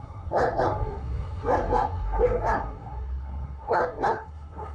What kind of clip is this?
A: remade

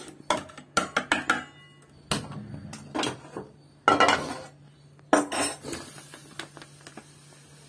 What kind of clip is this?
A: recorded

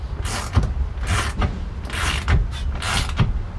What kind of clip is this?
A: recorded